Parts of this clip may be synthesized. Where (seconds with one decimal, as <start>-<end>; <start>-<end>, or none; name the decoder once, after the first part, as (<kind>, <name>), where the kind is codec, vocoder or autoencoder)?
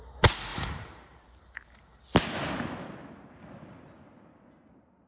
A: 0.5-2.0 (vocoder, BigVGAN v2)